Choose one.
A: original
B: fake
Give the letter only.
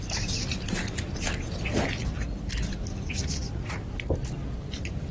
A